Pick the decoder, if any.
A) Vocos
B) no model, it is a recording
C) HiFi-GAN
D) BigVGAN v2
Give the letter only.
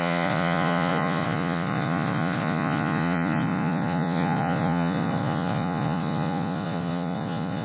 A